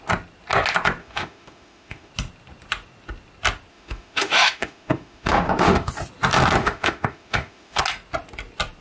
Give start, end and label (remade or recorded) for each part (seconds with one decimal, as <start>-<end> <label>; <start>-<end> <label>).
0.0-1.0 recorded; 1.0-2.1 remade; 2.1-3.7 recorded; 3.7-5.9 remade; 5.9-6.6 recorded; 6.6-7.8 remade; 7.8-8.8 recorded